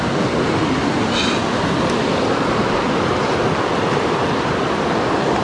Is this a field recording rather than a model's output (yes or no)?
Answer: yes